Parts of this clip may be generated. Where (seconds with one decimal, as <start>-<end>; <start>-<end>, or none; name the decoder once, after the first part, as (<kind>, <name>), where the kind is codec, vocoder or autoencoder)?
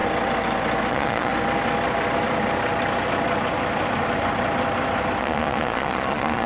0.9-1.3 (vocoder, Vocos); 5.2-6.5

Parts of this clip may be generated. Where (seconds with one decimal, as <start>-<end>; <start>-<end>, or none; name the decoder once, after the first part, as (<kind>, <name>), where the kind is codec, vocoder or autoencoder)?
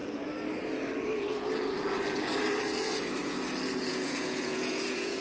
3.9-5.2 (vocoder, Vocos)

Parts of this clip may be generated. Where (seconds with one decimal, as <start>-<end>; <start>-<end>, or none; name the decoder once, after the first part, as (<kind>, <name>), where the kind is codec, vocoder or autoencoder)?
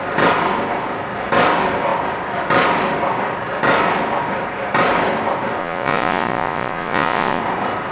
5.6-7.4 (vocoder, Vocos)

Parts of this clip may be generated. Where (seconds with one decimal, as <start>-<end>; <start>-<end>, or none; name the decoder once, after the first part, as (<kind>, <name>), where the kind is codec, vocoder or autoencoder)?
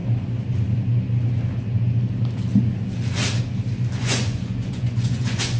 4.0-5.6 (vocoder, Vocos)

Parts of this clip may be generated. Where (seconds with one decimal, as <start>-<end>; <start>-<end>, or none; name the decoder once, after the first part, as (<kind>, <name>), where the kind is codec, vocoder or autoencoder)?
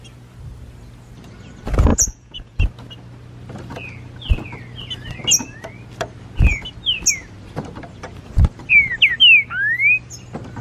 1.9-2.6 (vocoder, Vocos)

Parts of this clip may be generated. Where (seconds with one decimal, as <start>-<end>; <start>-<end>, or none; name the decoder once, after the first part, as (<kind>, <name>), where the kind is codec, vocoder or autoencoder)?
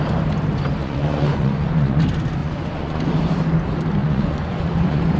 0.8-2.0 (vocoder, Vocos); 2.4-3.0; 4.0-5.2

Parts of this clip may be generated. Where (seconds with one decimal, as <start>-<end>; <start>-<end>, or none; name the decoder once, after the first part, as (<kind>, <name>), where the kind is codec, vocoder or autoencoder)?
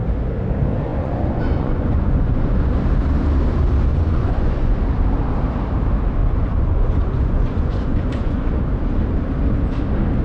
0.9-2.7 (vocoder, Vocos); 3.9-4.8; 6.2-8.5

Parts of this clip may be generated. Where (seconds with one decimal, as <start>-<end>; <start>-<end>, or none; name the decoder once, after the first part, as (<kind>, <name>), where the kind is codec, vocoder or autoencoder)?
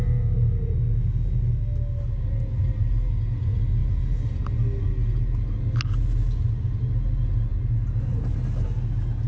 none